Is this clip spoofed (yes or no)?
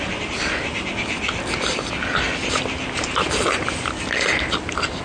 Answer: no